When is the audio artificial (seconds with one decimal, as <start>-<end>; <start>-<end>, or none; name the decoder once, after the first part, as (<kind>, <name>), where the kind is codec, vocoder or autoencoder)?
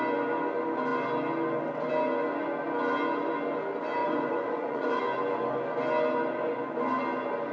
4.0-5.0 (vocoder, Vocos)